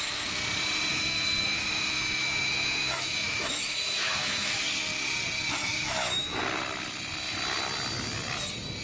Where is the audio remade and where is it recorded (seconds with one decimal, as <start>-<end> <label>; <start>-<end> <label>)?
0.0-0.9 recorded; 0.9-4.6 remade; 4.6-5.6 recorded; 5.6-6.4 remade; 6.4-8.8 recorded